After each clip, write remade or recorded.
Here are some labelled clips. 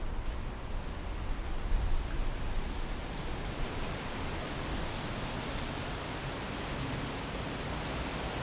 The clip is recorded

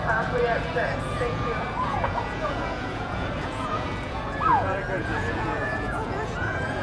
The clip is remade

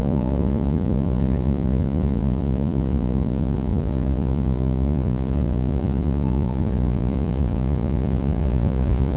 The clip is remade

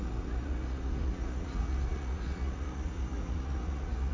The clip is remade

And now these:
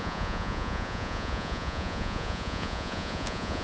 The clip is remade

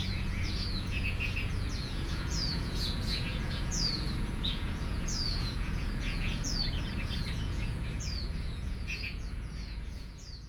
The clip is remade